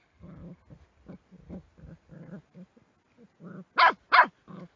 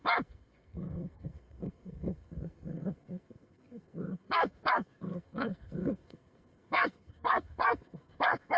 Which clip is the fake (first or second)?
second